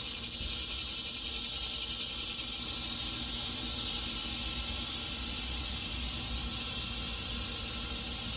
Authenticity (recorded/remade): recorded